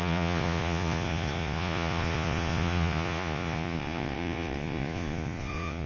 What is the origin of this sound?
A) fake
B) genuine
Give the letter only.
A